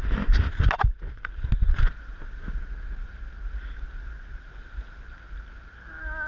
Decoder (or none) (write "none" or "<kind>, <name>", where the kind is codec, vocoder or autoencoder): none